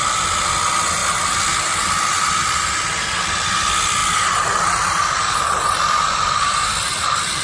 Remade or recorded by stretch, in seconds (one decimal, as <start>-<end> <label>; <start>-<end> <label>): 0.0-7.4 recorded

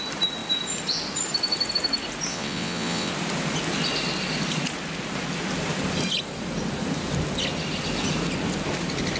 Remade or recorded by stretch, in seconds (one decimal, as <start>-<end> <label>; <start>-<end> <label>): 0.0-2.3 recorded; 2.3-3.1 remade; 3.1-9.2 recorded

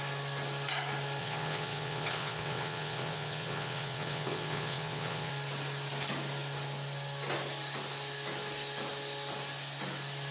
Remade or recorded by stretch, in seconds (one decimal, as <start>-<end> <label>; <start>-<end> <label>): 0.0-1.2 recorded; 1.2-5.3 remade; 5.3-10.3 recorded

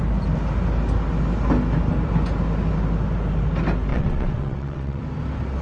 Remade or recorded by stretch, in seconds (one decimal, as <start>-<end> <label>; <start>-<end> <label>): 0.0-3.9 recorded; 3.9-5.0 remade; 5.0-5.6 recorded